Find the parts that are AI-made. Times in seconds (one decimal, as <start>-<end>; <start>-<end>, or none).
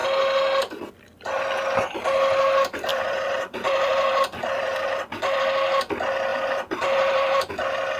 2.9-5.4; 6.3-7.5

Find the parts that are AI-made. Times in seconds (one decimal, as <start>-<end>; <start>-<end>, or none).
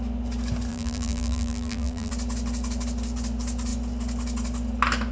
0.7-2.1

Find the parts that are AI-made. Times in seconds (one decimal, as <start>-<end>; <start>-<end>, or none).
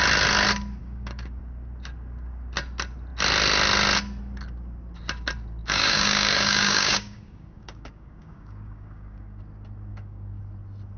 0.8-1.4; 5.6-9.4; 9.9-10.4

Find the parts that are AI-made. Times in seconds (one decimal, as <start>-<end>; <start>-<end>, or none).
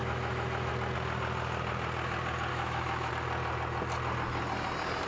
0.0-0.7; 2.5-3.1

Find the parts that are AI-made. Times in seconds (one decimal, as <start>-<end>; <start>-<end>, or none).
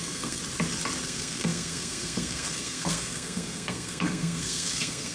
0.0-0.4; 1.0-5.1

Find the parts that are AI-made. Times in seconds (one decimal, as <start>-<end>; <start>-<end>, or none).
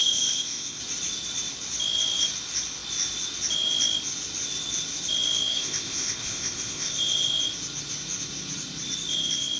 0.0-0.8; 5.5-7.0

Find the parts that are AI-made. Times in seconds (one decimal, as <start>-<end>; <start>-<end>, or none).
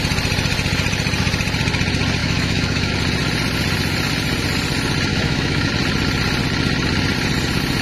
2.2-2.9; 5.1-5.7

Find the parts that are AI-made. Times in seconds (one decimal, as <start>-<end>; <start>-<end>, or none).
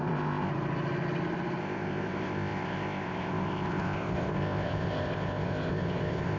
0.0-0.5; 1.6-6.4